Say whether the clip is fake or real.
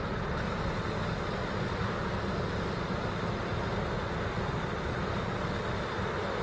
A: real